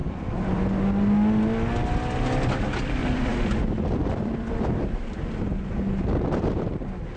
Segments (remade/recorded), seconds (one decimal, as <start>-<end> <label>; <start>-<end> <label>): 0.0-0.6 remade; 0.6-3.0 recorded; 3.0-6.8 remade; 6.8-7.2 recorded